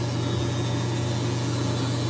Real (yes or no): yes